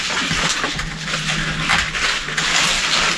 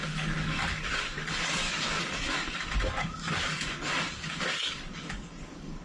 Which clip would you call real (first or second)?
first